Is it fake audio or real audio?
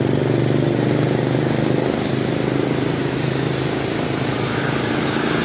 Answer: real